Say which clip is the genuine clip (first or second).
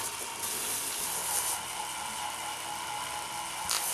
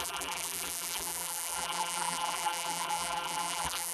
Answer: first